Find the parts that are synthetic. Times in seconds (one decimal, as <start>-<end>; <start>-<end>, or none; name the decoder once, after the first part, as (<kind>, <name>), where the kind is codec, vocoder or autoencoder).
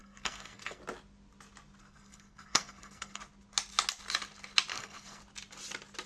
0.0-0.8 (codec, SNAC); 1.8-3.2; 4.7-5.2